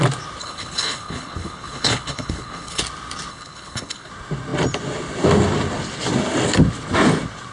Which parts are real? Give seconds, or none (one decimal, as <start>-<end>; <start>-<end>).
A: 0.0-0.4; 2.8-3.3; 4.1-7.5